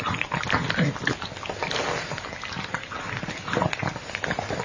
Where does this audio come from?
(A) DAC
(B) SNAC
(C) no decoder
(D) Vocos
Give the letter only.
C